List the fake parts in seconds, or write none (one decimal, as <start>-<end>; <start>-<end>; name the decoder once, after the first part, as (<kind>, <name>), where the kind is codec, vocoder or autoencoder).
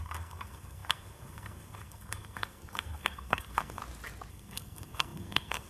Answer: 0.0-3.8 (codec, SNAC); 4.3-5.7